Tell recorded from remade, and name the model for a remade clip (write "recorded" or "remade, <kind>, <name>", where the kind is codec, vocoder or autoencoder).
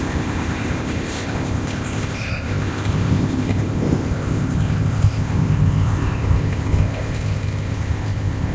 remade, codec, ZipCodec